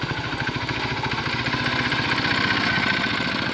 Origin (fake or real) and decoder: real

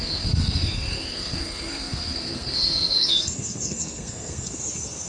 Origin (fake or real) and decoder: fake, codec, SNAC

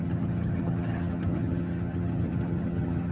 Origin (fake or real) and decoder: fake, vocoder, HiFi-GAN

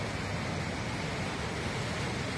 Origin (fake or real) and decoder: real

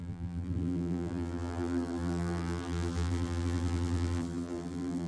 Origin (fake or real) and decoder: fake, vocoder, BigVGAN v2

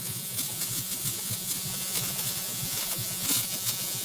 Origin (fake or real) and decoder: fake, vocoder, Vocos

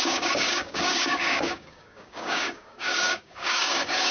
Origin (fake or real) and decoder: fake, codec, DAC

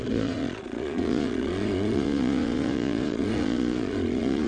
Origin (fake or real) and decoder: fake, vocoder, Vocos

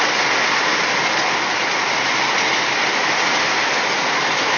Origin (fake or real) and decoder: real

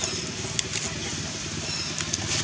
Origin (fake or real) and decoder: real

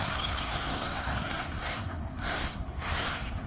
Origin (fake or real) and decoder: fake, codec, SNAC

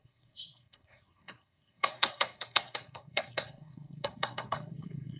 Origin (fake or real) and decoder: fake, codec, SNAC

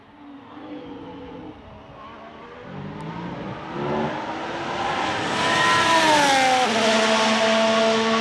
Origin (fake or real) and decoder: real